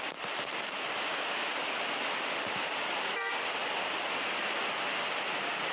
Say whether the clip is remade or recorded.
recorded